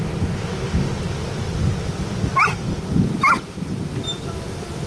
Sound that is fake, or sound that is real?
real